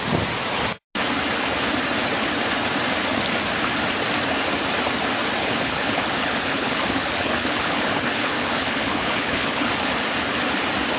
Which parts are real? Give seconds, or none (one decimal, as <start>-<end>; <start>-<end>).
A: 0.0-5.4; 9.7-11.0